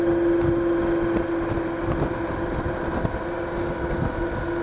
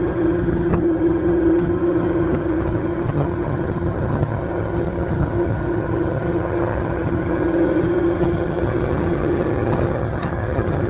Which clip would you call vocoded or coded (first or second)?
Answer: second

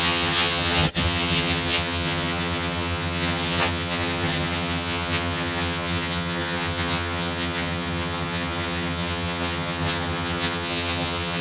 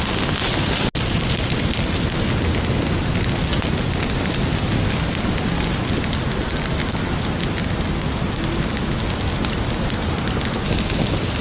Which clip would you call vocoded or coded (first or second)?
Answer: first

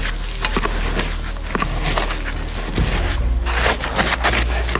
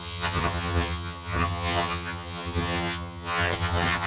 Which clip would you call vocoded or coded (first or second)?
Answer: second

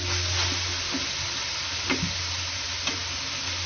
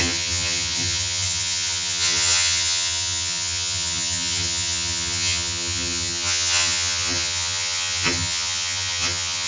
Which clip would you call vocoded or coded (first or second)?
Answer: second